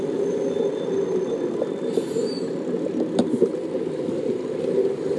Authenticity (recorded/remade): recorded